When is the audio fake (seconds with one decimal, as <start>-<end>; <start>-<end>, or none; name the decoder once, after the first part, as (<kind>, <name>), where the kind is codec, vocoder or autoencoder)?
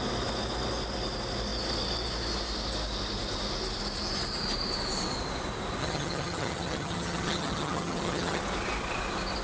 5.8-8.4 (vocoder, HiFi-GAN)